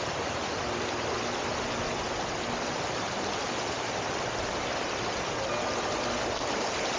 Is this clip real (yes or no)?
yes